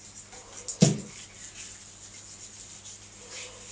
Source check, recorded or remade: recorded